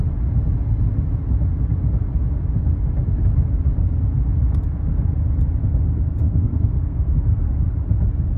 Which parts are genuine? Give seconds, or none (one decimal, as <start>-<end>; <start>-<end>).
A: 0.0-6.2; 7.1-8.4